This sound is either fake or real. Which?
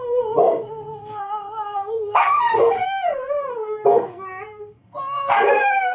fake